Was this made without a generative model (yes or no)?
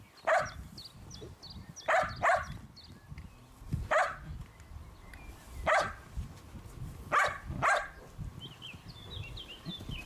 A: yes